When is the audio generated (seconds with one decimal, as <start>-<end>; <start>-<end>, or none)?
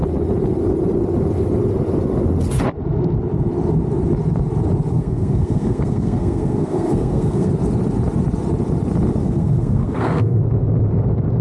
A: 4.9-7.5; 9.2-10.4